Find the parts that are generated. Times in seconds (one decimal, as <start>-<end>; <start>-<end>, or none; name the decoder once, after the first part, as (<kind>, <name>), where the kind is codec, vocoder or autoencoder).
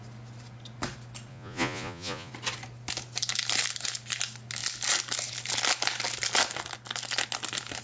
1.3-2.3 (vocoder, Vocos)